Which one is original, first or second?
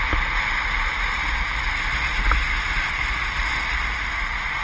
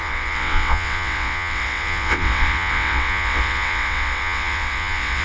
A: first